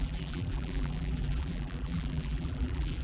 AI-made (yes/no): yes